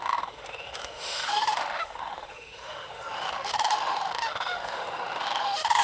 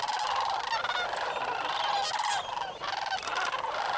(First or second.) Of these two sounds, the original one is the second